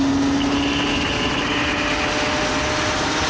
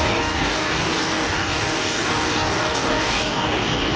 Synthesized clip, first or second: second